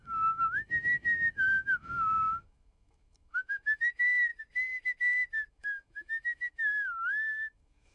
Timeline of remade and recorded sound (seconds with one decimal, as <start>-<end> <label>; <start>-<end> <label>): 0.0-4.3 remade; 4.3-5.5 recorded; 5.5-7.9 remade